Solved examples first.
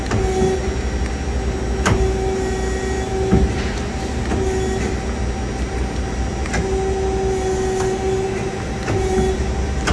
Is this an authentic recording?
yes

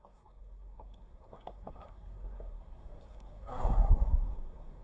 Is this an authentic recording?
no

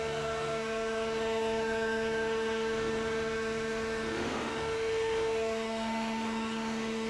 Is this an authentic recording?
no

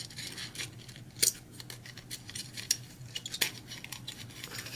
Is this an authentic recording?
yes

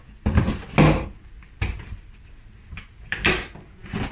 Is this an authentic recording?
yes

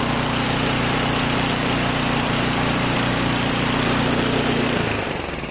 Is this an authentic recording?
no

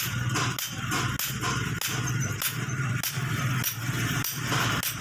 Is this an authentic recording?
yes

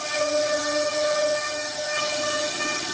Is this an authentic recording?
no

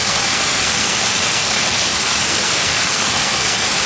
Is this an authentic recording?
no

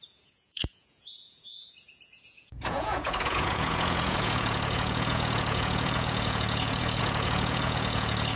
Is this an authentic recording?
no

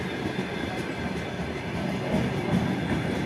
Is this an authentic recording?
yes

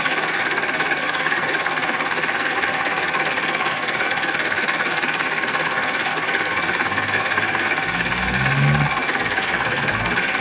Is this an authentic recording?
no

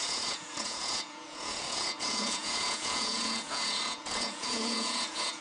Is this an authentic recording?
no